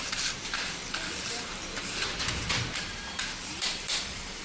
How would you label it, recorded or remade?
remade